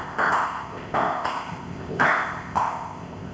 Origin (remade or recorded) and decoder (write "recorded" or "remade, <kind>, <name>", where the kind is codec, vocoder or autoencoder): remade, codec, ZipCodec